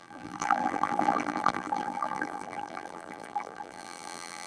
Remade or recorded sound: remade